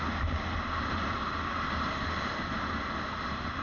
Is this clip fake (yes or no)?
no